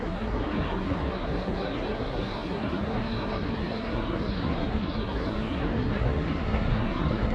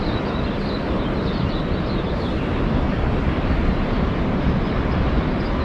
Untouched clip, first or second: second